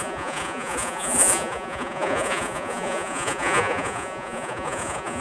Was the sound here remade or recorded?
remade